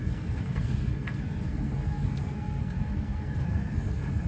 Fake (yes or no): yes